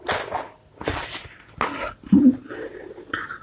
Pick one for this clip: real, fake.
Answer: real